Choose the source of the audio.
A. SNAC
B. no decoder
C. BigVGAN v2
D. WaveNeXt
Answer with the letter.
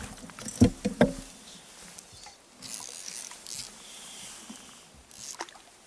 B